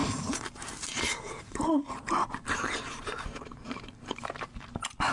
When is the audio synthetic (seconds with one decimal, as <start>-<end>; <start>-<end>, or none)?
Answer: 0.0-4.5